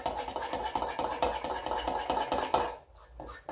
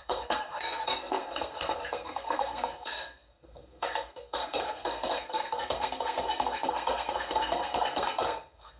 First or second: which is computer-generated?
second